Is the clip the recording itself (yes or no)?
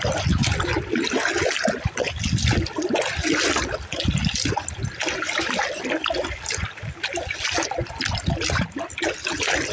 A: yes